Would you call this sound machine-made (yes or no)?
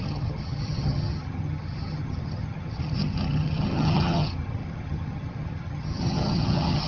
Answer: yes